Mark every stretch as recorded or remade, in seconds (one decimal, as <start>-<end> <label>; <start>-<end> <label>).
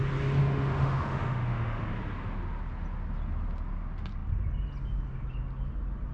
0.0-0.4 recorded; 0.4-1.8 remade; 1.8-6.1 recorded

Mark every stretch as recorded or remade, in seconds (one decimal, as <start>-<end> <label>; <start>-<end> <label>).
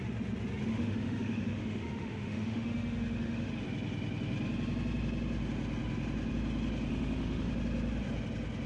0.0-0.7 recorded; 0.7-3.5 remade; 3.5-6.9 recorded; 6.9-7.5 remade; 7.5-8.7 recorded